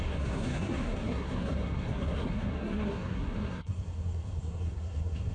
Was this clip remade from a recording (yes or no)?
yes